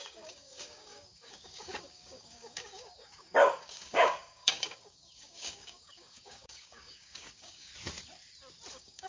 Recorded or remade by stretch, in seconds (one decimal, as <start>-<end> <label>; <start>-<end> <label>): 0.0-7.7 remade; 7.7-8.7 recorded; 8.7-9.1 remade

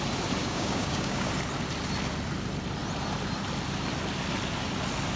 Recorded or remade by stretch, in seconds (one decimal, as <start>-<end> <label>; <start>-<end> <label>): 0.0-0.4 recorded; 0.4-1.3 remade; 1.3-5.2 recorded

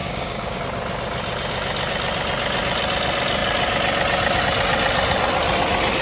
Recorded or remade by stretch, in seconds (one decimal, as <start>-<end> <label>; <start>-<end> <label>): 0.0-0.6 remade; 0.6-6.0 recorded

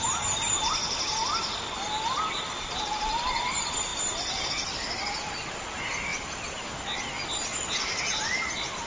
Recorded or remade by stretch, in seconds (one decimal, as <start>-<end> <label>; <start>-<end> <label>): 0.0-8.9 recorded

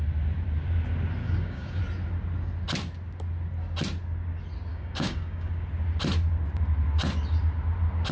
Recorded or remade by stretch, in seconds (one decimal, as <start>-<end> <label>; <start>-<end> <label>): 0.0-1.2 recorded; 1.2-1.8 remade; 1.8-4.7 recorded; 4.7-5.5 remade; 5.5-8.1 recorded

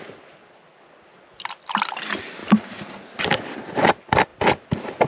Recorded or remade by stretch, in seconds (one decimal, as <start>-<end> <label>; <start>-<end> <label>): 0.0-5.1 recorded

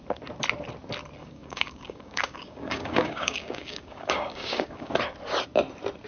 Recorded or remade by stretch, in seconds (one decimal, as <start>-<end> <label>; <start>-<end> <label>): 0.0-1.2 recorded; 1.2-4.9 remade; 4.9-6.1 recorded